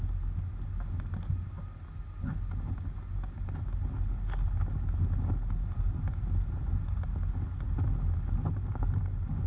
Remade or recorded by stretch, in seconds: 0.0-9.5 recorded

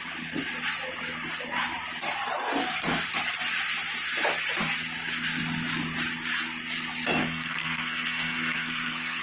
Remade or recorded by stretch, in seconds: 0.0-7.2 recorded; 7.2-9.2 remade

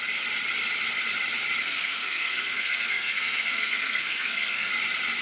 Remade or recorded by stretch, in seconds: 0.0-1.6 recorded; 1.6-4.7 remade; 4.7-5.2 recorded

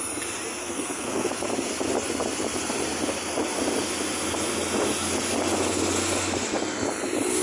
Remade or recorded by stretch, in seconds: 0.0-0.6 recorded; 0.6-1.3 remade; 1.3-7.4 recorded

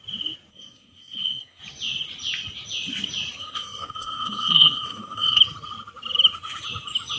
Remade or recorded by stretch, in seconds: 0.0-0.5 recorded; 0.5-1.6 remade; 1.6-3.4 recorded; 3.4-5.4 remade; 5.4-7.2 recorded

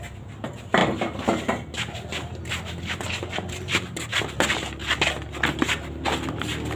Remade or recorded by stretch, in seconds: 0.0-6.8 recorded

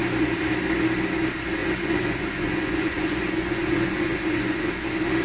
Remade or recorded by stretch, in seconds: 0.0-1.6 recorded; 1.6-4.7 remade; 4.7-5.2 recorded